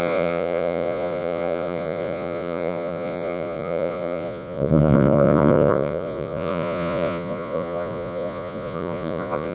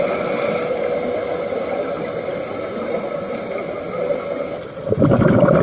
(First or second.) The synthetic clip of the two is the first